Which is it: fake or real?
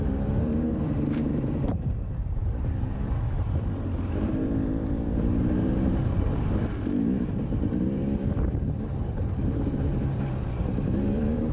fake